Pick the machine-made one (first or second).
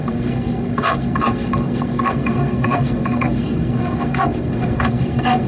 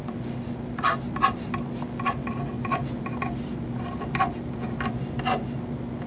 first